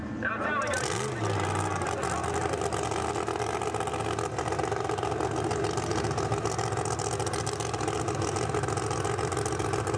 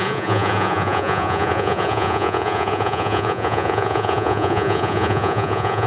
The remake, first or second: second